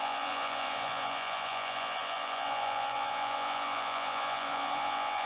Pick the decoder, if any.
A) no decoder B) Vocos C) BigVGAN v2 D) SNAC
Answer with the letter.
B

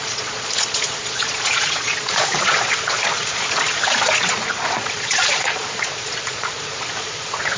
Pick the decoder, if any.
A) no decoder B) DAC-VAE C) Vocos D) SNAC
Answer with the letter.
C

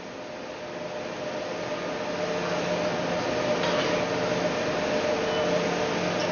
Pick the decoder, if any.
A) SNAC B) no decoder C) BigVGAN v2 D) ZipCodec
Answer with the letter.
B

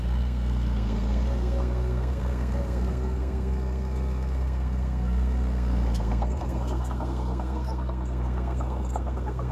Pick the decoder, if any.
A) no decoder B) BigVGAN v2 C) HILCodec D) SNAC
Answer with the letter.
D